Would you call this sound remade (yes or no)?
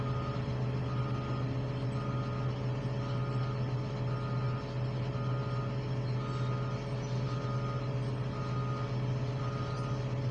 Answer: no